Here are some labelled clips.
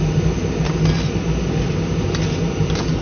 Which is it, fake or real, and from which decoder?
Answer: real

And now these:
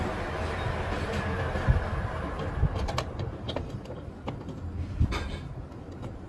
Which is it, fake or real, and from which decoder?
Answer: real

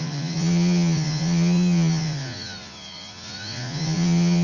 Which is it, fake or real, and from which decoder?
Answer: fake, vocoder, Vocos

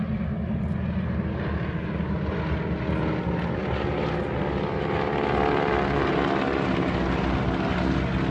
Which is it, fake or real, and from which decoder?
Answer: real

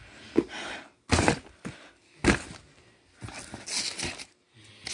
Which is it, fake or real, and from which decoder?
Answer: real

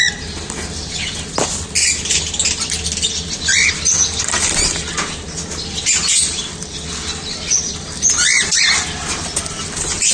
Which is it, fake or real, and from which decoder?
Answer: real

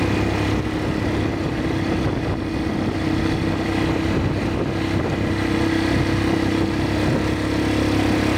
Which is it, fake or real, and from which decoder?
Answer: real